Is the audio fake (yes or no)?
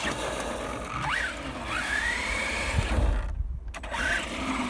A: no